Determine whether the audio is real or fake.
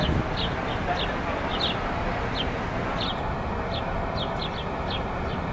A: real